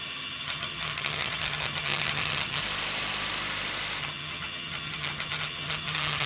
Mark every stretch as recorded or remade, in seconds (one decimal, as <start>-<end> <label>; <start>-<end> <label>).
0.0-2.6 remade; 2.6-4.0 recorded; 4.0-6.3 remade